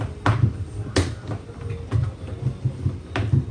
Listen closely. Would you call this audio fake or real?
real